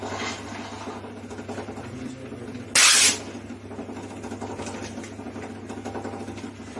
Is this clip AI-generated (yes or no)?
no